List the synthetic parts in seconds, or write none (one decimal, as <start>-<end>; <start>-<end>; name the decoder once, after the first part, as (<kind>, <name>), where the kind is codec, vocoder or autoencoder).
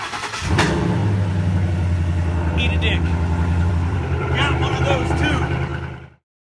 0.0-1.0 (vocoder, BigVGAN v2); 3.7-6.5